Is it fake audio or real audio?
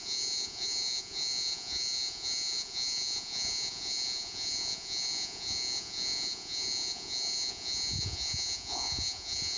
fake